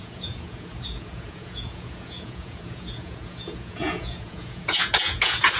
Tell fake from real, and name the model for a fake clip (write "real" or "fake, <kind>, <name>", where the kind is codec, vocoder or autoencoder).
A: fake, vocoder, Vocos